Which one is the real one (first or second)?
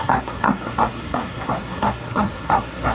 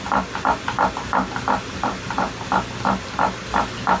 second